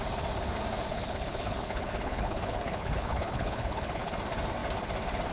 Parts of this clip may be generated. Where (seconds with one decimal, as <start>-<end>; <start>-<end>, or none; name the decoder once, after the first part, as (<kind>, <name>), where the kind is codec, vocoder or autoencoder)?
0.9-4.1 (codec, HILCodec)